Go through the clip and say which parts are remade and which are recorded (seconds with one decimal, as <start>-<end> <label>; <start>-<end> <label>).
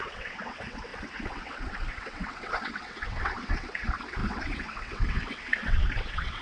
0.0-6.4 remade